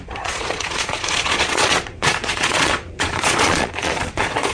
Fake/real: fake